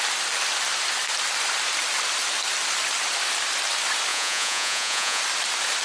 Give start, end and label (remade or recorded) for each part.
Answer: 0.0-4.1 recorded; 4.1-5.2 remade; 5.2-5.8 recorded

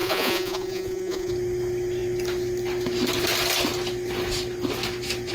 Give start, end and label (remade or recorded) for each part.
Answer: 0.0-1.3 remade; 1.3-5.3 recorded

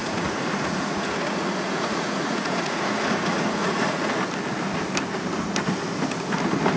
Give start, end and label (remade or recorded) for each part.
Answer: 0.0-4.1 remade; 4.1-6.8 recorded

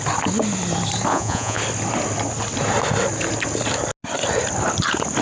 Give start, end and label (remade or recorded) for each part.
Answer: 0.0-1.1 recorded; 1.1-1.6 remade; 1.6-5.2 recorded